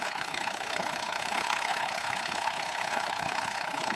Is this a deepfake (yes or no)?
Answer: yes